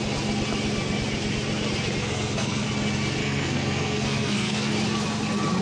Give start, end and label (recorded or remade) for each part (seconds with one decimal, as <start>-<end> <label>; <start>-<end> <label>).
0.0-2.0 recorded; 2.0-2.7 remade; 2.7-3.2 recorded; 3.2-4.7 remade; 4.7-5.6 recorded